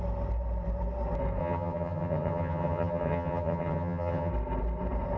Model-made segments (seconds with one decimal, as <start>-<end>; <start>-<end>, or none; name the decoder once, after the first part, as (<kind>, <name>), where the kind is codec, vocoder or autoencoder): 1.4-4.3 (vocoder, HiFi-GAN)